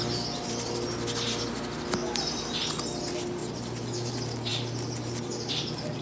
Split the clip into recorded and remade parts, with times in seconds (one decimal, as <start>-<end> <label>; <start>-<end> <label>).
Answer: 0.0-6.0 recorded